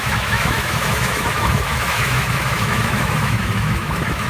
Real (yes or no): no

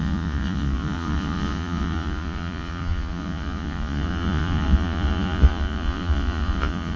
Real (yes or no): no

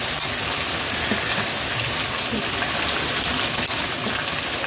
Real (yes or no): yes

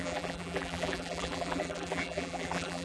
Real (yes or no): no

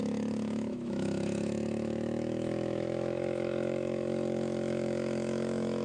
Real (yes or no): no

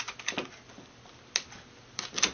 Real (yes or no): yes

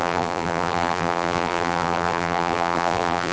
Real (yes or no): no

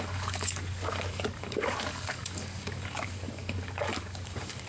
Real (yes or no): no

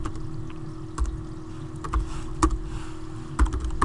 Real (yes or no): yes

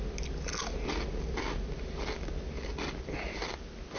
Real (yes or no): yes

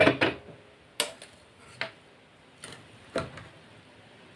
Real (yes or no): yes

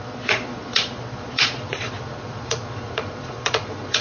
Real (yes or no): no